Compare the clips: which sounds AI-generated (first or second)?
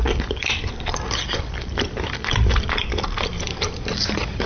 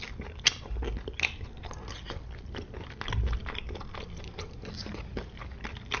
first